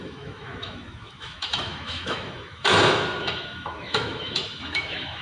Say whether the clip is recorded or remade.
remade